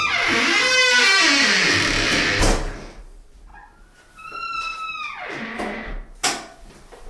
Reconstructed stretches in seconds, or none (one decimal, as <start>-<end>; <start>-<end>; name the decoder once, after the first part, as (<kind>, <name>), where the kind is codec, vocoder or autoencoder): none